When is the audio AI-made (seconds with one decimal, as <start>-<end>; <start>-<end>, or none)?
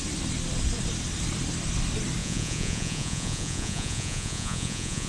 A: 2.2-5.1